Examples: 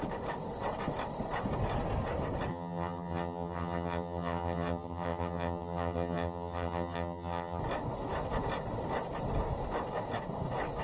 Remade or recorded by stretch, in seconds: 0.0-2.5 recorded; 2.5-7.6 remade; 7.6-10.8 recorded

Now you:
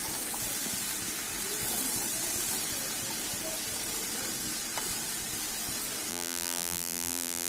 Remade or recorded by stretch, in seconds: 0.0-6.1 recorded; 6.1-7.5 remade

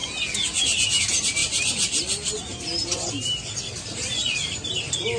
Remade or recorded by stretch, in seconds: 0.0-1.4 recorded; 1.4-3.1 remade; 3.1-5.2 recorded

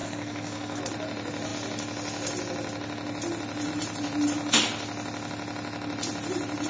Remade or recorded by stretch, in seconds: 0.0-0.8 remade; 0.8-6.7 recorded

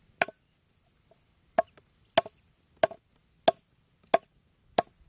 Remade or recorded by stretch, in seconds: 0.0-5.1 recorded

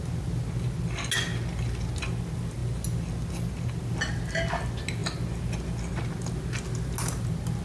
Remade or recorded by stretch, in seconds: 0.0-7.6 recorded

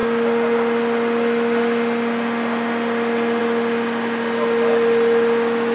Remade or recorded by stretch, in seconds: 0.0-5.7 recorded

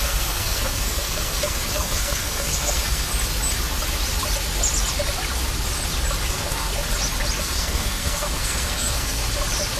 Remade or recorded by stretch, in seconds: 0.0-3.1 remade; 3.1-6.3 recorded; 6.3-6.7 remade; 6.7-7.4 recorded; 7.4-9.2 remade; 9.2-9.8 recorded